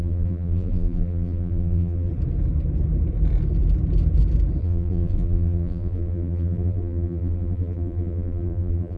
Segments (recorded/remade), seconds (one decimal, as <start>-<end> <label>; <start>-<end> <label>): 0.0-2.1 remade; 2.1-4.6 recorded; 4.6-9.0 remade